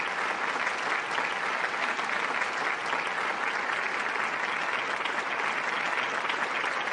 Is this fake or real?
real